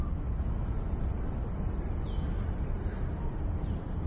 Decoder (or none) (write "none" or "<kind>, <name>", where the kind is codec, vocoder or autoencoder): none